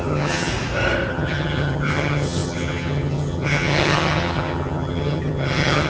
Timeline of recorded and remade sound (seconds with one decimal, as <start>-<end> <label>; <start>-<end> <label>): 0.0-0.5 remade; 0.5-1.1 recorded; 1.1-5.9 remade